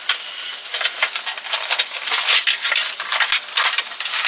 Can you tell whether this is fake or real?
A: real